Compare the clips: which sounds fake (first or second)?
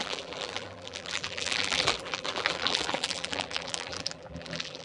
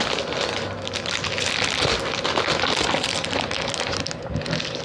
first